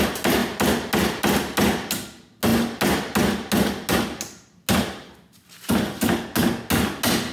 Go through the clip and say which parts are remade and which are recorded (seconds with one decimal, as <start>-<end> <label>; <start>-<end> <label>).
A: 0.0-7.3 recorded